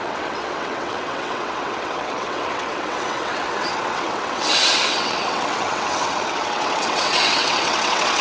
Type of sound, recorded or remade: remade